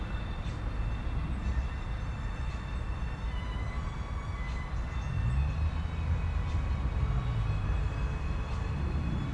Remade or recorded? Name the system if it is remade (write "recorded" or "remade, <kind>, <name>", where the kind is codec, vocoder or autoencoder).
recorded